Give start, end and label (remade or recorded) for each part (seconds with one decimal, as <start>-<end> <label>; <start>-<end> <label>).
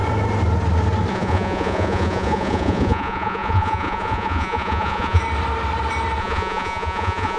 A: 0.0-1.1 recorded; 1.1-5.2 remade; 5.2-6.2 recorded; 6.2-7.4 remade